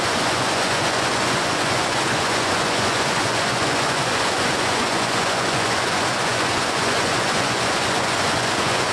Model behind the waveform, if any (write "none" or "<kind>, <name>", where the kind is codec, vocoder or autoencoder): vocoder, Vocos